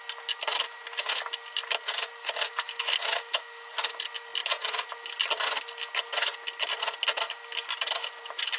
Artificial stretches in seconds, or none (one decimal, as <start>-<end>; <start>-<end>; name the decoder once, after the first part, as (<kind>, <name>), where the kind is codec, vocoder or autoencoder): 2.2-3.7 (autoencoder, DAC-VAE)